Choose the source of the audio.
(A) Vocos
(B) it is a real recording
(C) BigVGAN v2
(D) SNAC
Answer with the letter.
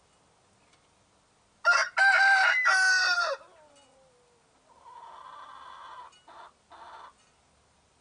B